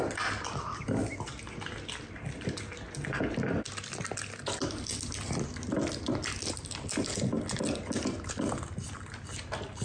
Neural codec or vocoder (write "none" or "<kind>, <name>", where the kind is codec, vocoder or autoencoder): none